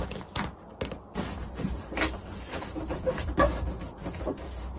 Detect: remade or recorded recorded